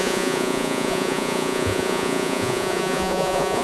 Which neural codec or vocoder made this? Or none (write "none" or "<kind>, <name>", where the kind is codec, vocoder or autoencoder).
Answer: vocoder, Vocos